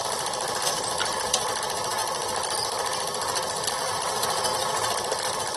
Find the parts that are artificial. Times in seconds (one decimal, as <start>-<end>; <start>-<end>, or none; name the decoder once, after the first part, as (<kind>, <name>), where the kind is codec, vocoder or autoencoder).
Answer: 0.0-2.0 (vocoder, BigVGAN v2); 3.8-5.6